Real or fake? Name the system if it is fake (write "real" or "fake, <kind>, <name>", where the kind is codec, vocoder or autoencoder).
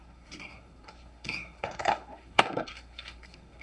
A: fake, codec, SNAC